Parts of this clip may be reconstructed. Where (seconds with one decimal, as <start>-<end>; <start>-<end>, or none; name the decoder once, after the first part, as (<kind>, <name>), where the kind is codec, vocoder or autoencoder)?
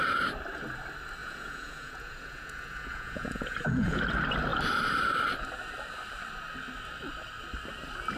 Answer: 1.2-4.0 (vocoder, Vocos)